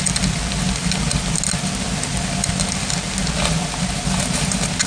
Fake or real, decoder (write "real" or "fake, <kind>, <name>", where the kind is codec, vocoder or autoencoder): real